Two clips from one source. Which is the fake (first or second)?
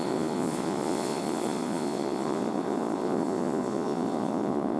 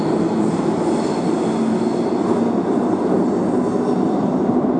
first